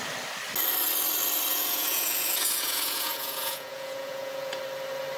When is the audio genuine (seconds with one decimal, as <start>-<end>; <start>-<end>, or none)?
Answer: 0.0-1.5; 4.6-5.2